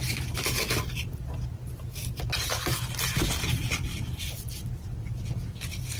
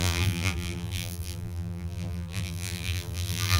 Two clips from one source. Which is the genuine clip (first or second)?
first